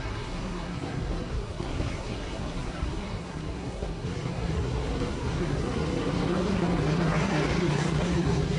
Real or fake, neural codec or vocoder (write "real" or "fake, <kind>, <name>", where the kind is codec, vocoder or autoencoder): fake, codec, SNAC